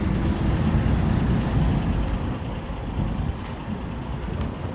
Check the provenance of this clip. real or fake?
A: real